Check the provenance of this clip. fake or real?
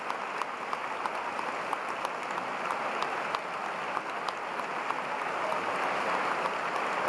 real